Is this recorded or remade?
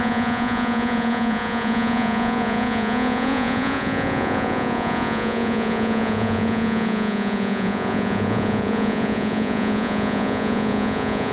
remade